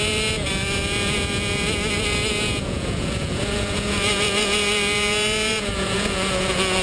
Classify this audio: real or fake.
fake